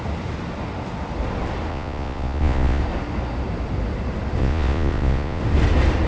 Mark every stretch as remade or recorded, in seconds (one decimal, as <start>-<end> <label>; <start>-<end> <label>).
0.0-1.7 recorded; 1.7-2.8 remade; 2.8-4.4 recorded; 4.4-5.4 remade; 5.4-6.1 recorded